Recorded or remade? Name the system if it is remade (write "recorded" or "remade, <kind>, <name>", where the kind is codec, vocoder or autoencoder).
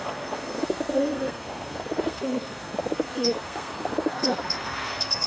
remade, codec, SNAC